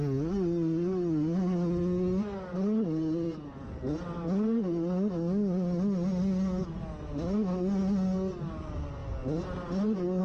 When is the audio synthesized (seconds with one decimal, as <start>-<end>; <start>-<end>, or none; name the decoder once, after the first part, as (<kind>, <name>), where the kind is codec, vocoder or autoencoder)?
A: none